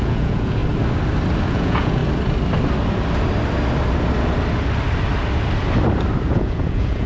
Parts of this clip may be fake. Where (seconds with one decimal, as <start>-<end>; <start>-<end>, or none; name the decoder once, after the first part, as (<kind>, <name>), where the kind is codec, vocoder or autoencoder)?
0.0-0.6 (vocoder, Vocos); 1.5-2.0; 6.3-7.1